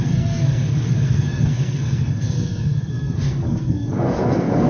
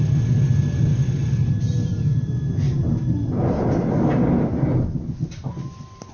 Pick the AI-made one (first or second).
first